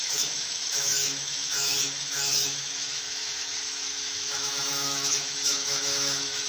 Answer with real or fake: fake